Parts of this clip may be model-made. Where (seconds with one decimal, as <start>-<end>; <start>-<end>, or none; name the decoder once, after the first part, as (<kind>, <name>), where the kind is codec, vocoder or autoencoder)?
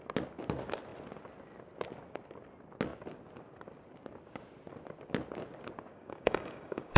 5.9-7.0 (codec, DAC)